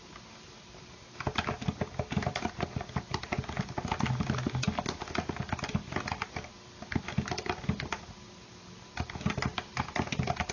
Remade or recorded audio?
recorded